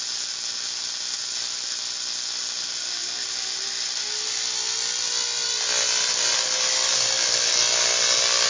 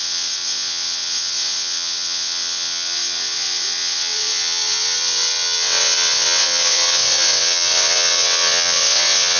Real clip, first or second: first